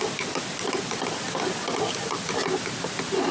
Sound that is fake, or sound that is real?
real